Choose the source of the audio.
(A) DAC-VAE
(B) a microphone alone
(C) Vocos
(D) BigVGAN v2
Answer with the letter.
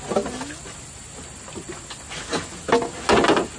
B